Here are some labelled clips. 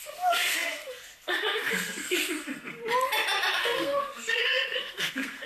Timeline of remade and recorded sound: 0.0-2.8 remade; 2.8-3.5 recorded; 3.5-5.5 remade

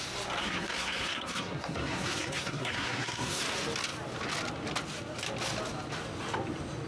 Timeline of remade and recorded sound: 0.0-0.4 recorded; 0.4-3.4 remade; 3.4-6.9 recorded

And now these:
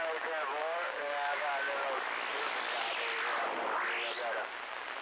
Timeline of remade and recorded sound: 0.0-0.6 recorded; 0.6-1.5 remade; 1.5-5.0 recorded

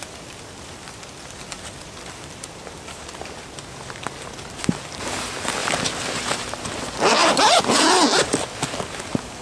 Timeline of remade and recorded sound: 0.0-4.9 remade; 4.9-5.6 recorded; 5.6-6.7 remade; 6.7-7.2 recorded; 7.2-8.6 remade; 8.6-9.4 recorded

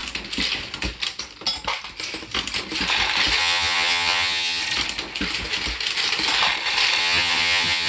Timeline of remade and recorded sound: 0.0-3.4 recorded; 3.4-4.6 remade; 4.6-7.0 recorded; 7.0-7.9 remade